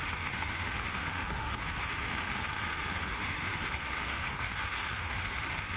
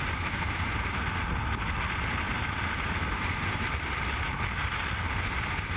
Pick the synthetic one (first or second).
first